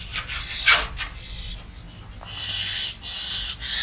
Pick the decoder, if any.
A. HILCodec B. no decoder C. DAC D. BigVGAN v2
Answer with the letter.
B